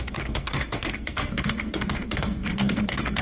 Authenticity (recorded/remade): remade